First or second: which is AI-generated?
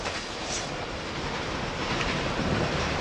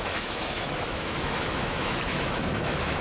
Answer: second